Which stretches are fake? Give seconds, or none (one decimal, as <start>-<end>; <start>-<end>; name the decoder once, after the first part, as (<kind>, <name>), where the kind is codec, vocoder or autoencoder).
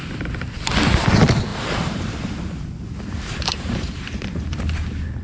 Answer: 1.5-4.6 (vocoder, BigVGAN v2)